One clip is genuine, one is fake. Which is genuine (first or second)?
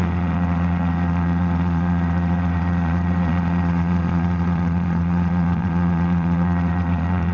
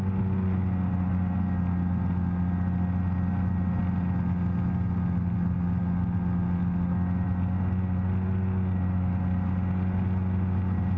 second